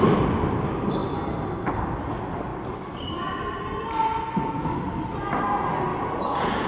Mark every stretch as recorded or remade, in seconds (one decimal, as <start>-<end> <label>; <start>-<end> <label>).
0.0-5.9 recorded; 5.9-6.7 remade